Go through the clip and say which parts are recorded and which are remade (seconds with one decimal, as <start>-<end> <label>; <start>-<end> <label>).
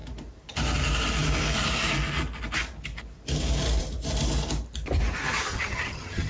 0.0-5.5 recorded; 5.5-6.3 remade